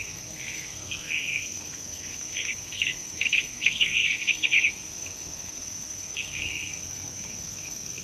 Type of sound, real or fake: fake